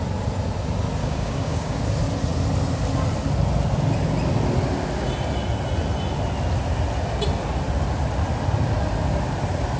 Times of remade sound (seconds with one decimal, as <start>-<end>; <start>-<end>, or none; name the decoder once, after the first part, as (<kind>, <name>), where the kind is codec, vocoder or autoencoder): 1.0-1.8 (codec, DAC)